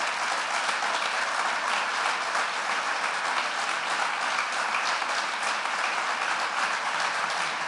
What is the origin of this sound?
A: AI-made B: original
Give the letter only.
B